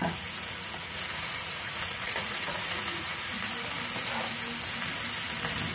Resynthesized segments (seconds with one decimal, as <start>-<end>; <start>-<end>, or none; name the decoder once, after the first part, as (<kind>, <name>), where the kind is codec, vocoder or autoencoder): 0.0-3.4 (vocoder, Vocos)